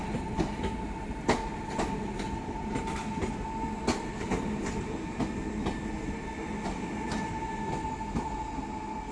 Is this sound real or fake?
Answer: real